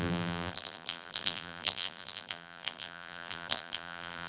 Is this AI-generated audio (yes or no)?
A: yes